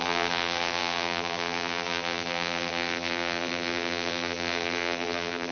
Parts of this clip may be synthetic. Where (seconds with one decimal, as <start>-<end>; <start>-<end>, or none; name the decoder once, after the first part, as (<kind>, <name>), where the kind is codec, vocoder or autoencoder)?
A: 0.0-5.5 (vocoder, BigVGAN v2)